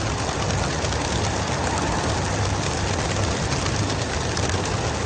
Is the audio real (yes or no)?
yes